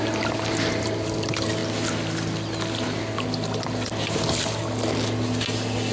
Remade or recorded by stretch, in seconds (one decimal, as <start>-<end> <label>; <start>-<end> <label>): 0.0-5.9 recorded